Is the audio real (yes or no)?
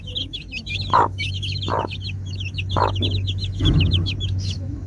no